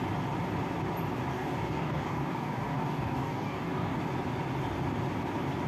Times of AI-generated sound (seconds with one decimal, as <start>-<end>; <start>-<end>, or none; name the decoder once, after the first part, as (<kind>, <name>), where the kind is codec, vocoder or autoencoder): 1.3-4.0 (codec, DAC)